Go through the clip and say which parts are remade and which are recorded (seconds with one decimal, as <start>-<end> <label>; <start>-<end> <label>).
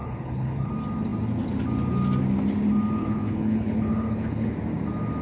0.0-0.7 remade; 0.7-3.0 recorded; 3.0-4.5 remade; 4.5-5.2 recorded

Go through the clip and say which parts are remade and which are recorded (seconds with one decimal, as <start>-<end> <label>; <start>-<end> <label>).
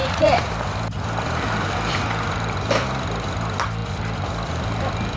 0.0-0.5 remade; 0.5-5.2 recorded